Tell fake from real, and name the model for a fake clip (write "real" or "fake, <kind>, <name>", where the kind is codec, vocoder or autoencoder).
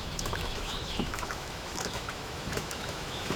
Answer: fake, autoencoder, DAC-VAE